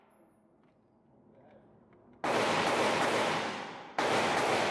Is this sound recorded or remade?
recorded